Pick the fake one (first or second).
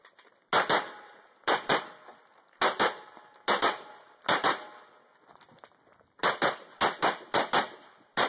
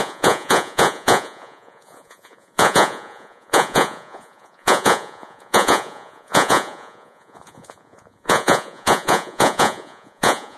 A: second